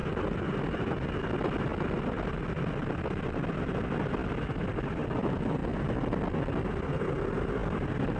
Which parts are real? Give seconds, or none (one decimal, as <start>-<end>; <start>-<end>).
0.0-8.2